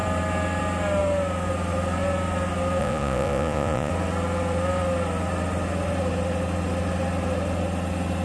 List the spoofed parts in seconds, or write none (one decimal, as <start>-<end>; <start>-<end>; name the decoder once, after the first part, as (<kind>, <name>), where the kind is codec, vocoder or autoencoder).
2.8-3.9 (vocoder, Vocos)